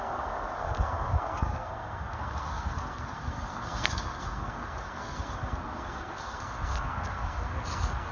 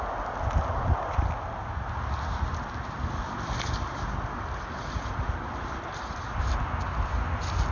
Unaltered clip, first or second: second